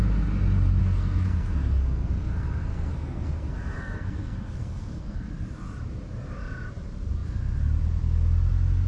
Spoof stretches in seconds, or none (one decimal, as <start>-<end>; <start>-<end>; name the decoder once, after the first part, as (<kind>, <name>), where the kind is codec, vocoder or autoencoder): 0.8-5.3 (codec, SNAC)